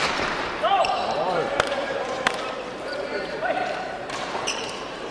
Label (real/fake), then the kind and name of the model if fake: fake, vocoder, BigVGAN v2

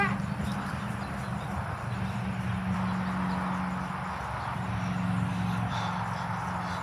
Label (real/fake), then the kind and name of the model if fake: real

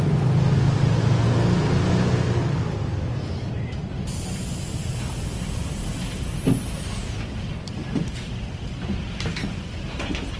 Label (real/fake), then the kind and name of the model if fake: real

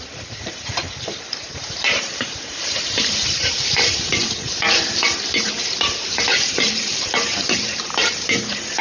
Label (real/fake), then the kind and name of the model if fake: fake, vocoder, BigVGAN v2